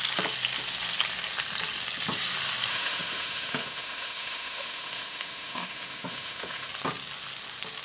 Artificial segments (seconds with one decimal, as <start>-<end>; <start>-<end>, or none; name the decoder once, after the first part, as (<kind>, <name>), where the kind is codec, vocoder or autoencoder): 2.7-6.7 (autoencoder, DAC-VAE)